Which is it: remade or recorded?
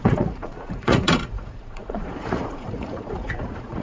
remade